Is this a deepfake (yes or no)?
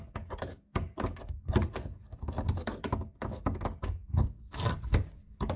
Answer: yes